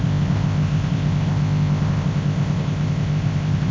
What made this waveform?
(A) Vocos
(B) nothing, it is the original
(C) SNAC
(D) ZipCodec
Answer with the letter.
D